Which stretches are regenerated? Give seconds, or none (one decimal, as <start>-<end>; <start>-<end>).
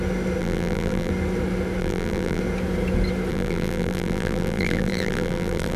0.4-1.1; 1.8-2.4; 3.3-5.8